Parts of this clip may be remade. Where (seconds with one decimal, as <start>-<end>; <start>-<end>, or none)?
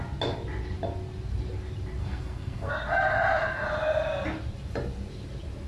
2.0-2.7